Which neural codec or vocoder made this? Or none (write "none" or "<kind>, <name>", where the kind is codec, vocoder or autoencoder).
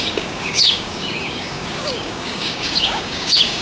codec, DAC